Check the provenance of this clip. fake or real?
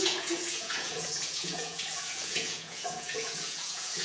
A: fake